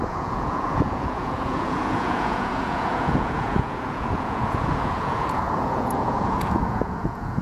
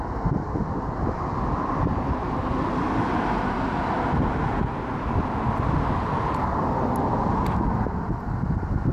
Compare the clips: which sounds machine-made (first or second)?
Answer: first